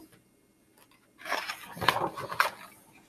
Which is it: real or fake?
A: real